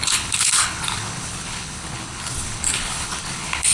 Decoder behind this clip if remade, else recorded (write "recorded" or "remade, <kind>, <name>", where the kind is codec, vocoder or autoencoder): remade, codec, HILCodec